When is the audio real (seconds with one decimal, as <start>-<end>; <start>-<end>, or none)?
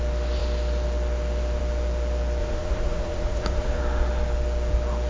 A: 0.0-2.4; 3.8-5.1